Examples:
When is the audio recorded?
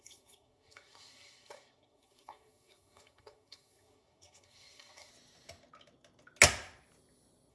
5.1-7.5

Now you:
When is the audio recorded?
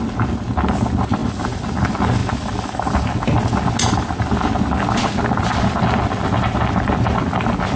0.0-7.8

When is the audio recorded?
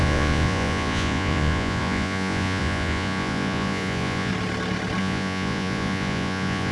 4.3-5.0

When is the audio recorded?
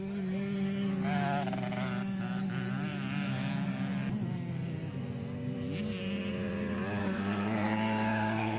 0.0-7.0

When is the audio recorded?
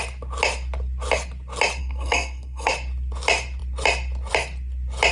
0.0-1.8; 2.7-5.1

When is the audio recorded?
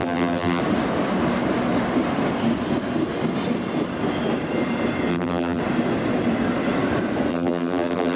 0.6-5.1; 5.6-7.3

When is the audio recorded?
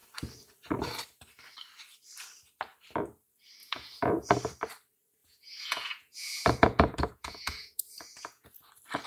0.0-3.6; 4.3-5.2; 8.7-9.1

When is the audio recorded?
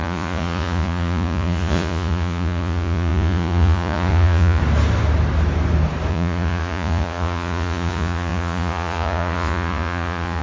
4.6-6.1